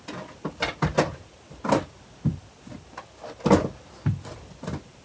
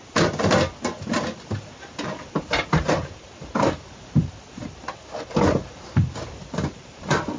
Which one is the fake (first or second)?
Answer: second